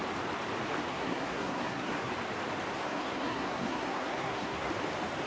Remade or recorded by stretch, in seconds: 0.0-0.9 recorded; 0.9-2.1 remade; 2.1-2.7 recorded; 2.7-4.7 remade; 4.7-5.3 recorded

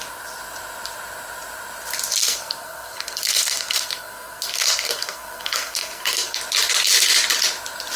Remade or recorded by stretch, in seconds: 0.0-2.2 recorded; 2.2-6.4 remade; 6.4-8.0 recorded

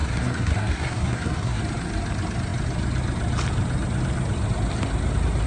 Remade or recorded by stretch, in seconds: 0.0-1.6 remade; 1.6-5.5 recorded